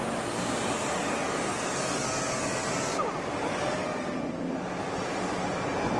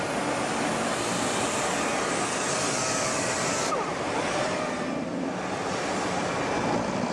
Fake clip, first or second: second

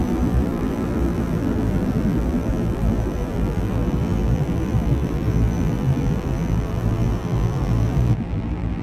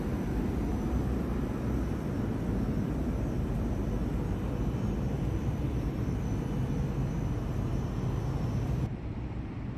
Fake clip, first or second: first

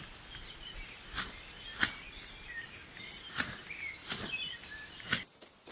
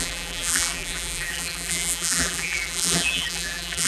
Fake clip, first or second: second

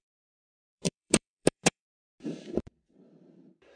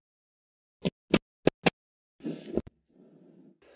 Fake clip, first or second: first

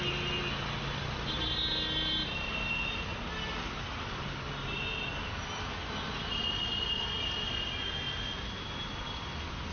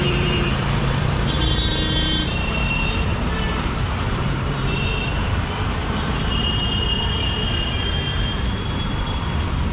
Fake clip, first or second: second